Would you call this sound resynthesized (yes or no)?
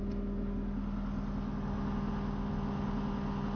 no